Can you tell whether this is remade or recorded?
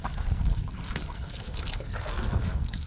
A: remade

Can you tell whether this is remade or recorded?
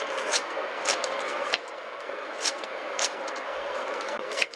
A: remade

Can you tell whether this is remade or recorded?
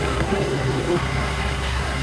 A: remade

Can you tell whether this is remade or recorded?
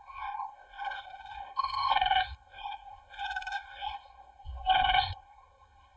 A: remade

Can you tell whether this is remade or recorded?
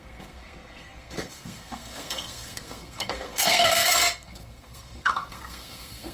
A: remade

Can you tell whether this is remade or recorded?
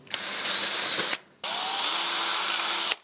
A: recorded